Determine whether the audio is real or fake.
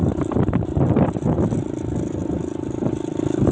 real